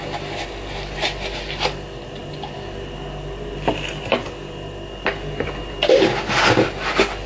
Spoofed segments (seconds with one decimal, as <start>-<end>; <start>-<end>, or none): none